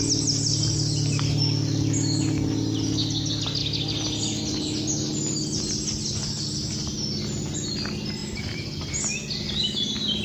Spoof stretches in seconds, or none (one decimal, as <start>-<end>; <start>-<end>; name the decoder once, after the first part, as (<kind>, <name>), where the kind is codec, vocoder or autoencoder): 8.2-8.9 (vocoder, BigVGAN v2)